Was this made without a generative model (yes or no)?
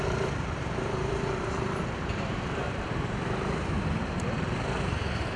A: no